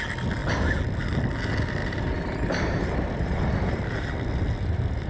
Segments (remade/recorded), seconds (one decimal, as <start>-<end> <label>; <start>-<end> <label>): 0.0-1.8 recorded; 1.8-3.8 remade; 3.8-5.1 recorded